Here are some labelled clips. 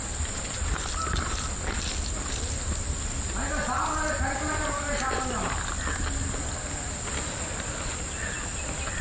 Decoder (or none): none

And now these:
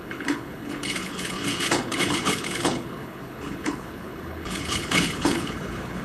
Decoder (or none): codec, HILCodec